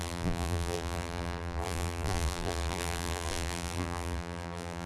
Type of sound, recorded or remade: remade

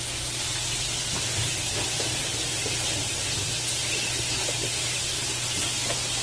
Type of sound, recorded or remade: recorded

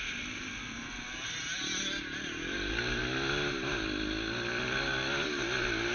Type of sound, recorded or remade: recorded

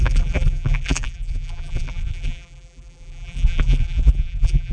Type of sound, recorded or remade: remade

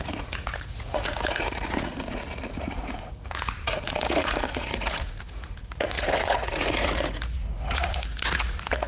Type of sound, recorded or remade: remade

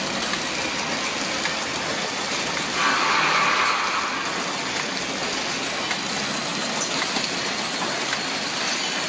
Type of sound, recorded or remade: recorded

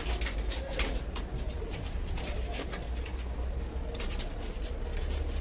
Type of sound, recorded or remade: recorded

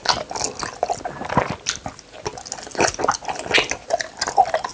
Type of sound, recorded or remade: recorded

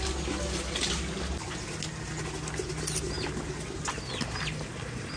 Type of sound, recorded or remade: recorded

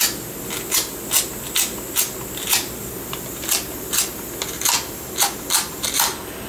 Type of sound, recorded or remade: recorded